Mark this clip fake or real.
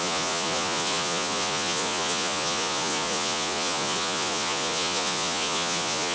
fake